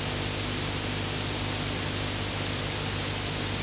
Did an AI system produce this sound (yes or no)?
no